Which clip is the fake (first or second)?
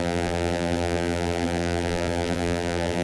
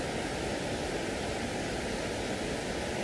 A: first